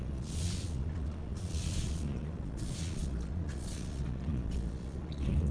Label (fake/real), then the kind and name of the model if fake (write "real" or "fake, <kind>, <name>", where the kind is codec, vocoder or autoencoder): fake, vocoder, Vocos